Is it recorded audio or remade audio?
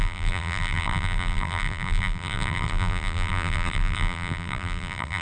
remade